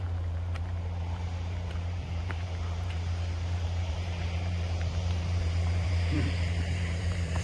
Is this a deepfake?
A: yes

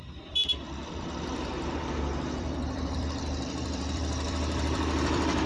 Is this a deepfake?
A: yes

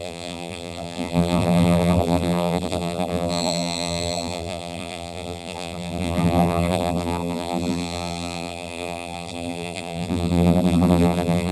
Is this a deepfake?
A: yes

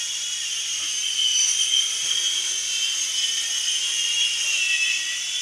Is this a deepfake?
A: no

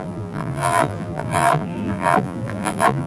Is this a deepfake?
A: yes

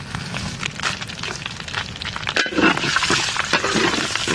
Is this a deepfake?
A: no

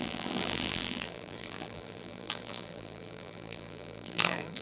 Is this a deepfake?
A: yes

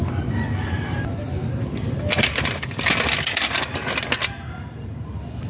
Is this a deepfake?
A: no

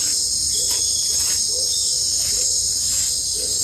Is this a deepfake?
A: no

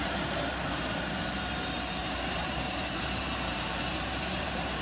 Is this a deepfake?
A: yes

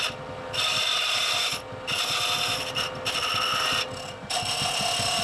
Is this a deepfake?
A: no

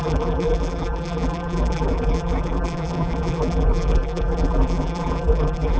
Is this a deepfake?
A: yes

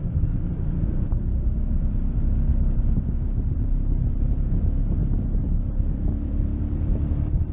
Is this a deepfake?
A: yes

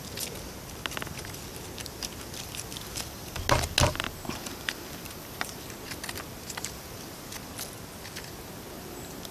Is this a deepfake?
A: no